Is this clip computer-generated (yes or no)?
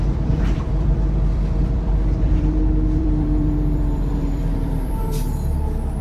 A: yes